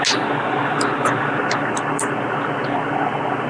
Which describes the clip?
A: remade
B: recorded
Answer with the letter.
B